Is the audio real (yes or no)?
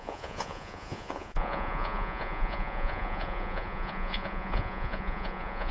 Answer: no